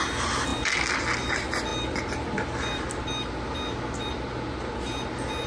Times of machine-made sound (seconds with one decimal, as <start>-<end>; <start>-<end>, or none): none